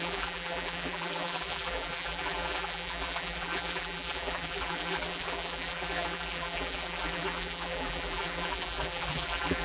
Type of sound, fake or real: fake